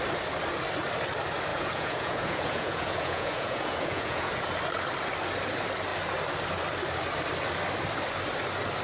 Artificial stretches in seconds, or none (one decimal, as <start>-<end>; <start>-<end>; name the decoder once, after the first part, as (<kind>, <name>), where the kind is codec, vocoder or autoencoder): 1.5-4.3 (vocoder, Vocos)